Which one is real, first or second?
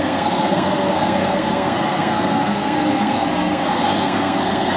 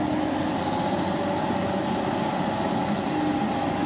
second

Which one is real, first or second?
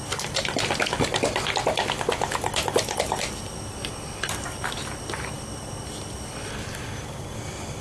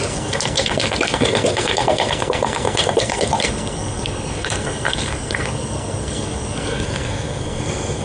first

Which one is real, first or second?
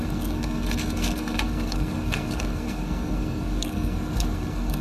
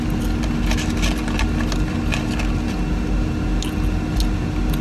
second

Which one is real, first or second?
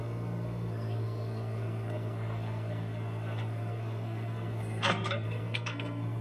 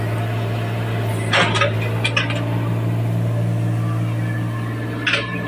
second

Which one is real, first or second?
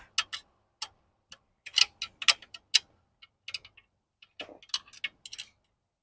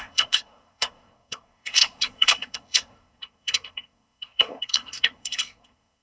first